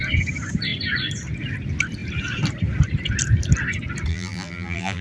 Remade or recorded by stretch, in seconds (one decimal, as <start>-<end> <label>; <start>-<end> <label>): 0.0-4.1 recorded; 4.1-5.0 remade